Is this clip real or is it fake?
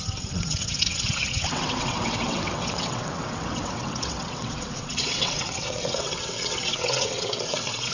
fake